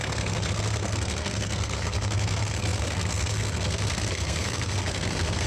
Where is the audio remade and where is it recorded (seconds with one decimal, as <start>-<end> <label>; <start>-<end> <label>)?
0.0-5.5 remade